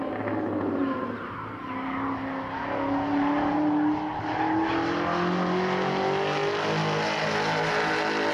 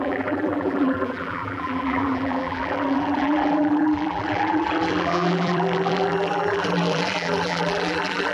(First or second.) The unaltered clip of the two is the first